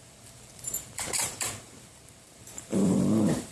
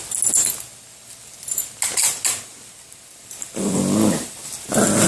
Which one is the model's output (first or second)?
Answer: first